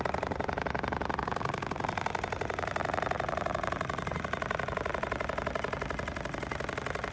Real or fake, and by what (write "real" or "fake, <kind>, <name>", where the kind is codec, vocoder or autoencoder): real